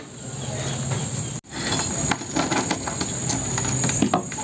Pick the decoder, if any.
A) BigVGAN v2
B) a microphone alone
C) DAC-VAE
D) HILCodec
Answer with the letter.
B